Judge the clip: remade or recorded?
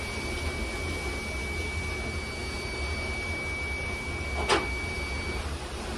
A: recorded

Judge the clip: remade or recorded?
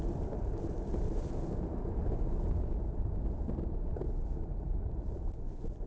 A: remade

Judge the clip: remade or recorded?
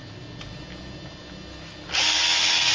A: recorded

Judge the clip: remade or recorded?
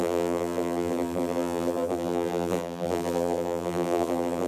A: remade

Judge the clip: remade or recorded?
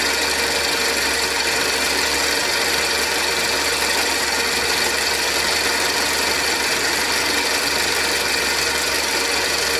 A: recorded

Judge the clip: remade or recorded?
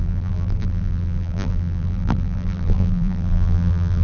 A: remade